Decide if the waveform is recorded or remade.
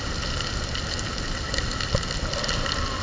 recorded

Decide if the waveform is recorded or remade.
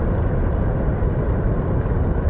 recorded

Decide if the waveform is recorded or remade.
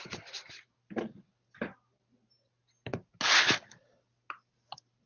recorded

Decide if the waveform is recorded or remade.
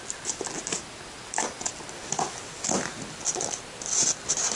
recorded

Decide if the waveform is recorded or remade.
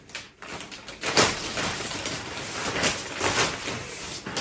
recorded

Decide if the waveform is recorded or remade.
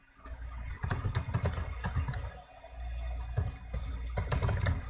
recorded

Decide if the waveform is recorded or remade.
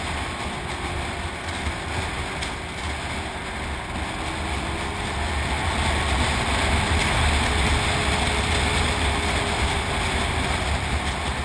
recorded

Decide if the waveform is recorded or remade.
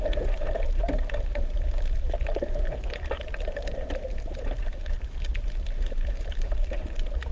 remade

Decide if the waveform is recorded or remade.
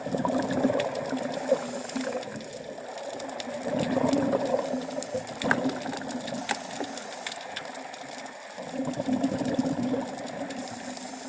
recorded